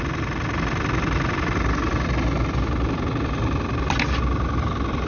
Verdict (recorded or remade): recorded